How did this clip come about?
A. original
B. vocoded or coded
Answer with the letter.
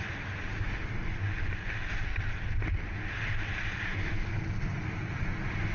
A